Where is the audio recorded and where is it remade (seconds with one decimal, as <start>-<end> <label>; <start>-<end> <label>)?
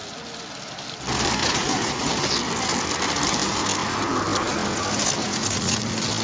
0.0-1.4 recorded; 1.4-2.1 remade; 2.1-5.2 recorded; 5.2-5.8 remade; 5.8-6.2 recorded